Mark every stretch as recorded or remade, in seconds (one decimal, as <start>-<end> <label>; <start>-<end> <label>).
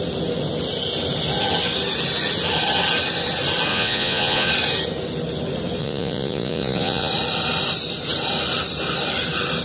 0.0-3.7 recorded; 3.7-4.5 remade; 4.5-5.8 recorded; 5.8-7.1 remade; 7.1-9.6 recorded